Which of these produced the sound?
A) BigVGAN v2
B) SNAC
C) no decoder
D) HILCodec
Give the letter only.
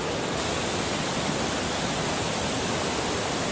C